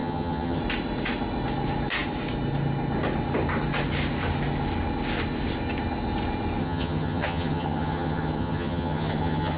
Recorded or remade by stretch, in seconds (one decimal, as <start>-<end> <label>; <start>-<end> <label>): 0.0-0.6 remade; 0.6-6.6 recorded; 6.6-9.6 remade